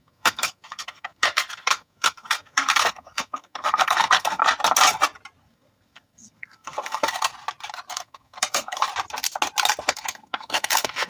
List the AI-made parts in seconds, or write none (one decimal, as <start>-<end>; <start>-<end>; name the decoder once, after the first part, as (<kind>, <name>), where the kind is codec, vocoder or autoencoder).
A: 0.0-4.4 (codec, SNAC); 5.4-7.3; 7.9-8.9; 9.9-11.1